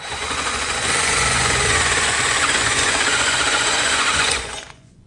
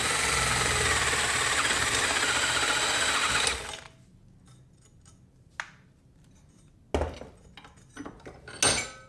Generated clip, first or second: first